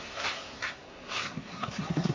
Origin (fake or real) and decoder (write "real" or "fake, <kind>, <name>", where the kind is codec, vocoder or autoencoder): fake, codec, SNAC